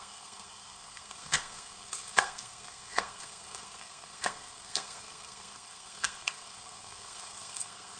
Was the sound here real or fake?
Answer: fake